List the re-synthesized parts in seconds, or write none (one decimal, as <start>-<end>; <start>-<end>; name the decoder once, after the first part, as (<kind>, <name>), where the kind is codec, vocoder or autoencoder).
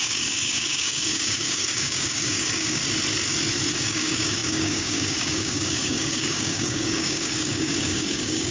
0.0-2.8 (codec, DAC); 3.7-8.5